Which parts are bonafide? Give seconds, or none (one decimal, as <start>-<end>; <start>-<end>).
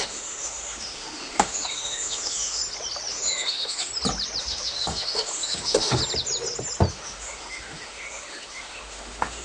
2.6-3.1; 3.9-4.4; 6.0-6.9